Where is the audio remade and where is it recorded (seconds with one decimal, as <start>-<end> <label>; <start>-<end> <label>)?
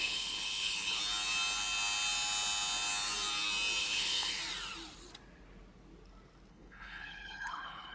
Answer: 0.0-1.0 remade; 1.0-3.8 recorded; 3.8-4.4 remade; 4.4-6.5 recorded; 6.5-7.9 remade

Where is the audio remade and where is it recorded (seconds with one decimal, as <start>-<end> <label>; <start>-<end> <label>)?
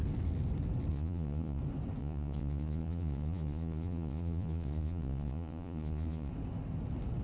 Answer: 0.0-0.9 recorded; 0.9-1.6 remade; 1.6-2.0 recorded; 2.0-6.3 remade; 6.3-7.2 recorded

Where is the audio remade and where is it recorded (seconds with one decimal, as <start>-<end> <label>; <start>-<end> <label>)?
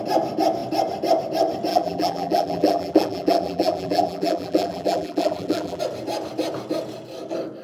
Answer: 0.0-1.7 recorded; 1.7-5.8 remade; 5.8-7.6 recorded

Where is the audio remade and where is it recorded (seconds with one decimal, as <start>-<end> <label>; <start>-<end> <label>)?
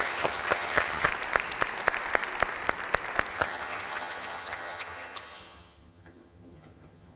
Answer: 0.0-1.1 remade; 1.1-3.3 recorded; 3.3-7.2 remade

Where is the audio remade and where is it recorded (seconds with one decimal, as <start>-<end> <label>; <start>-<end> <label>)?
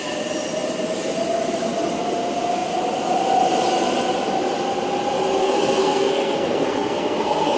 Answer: 0.0-5.4 recorded; 5.4-7.6 remade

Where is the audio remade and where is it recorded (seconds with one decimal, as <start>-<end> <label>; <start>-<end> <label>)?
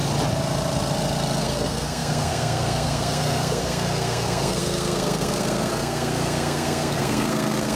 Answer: 0.0-1.4 recorded; 1.4-7.8 remade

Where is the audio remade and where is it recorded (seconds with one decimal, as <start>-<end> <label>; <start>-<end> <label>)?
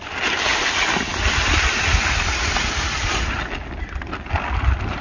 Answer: 0.0-5.0 recorded